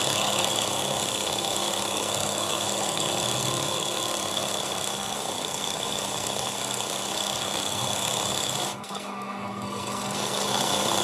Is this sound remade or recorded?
remade